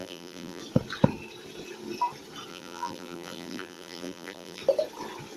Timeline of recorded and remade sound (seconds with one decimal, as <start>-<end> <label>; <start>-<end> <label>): 0.0-0.6 remade; 0.6-2.5 recorded; 2.5-4.6 remade; 4.6-5.4 recorded